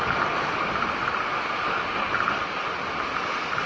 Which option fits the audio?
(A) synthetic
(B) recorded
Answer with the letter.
B